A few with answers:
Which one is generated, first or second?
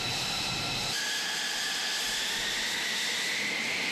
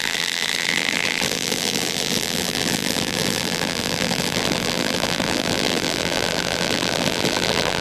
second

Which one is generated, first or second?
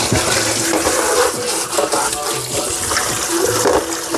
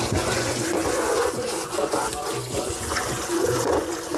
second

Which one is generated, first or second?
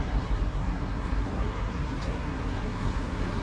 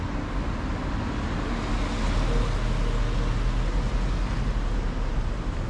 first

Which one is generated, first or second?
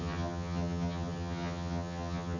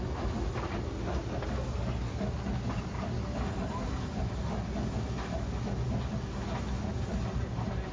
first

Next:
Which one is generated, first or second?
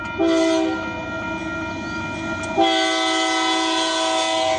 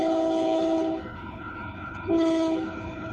second